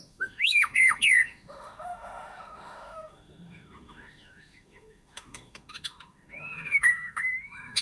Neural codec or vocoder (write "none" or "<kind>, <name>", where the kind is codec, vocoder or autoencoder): autoencoder, DAC-VAE